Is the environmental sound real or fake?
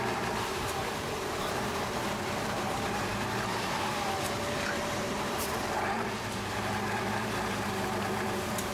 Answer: fake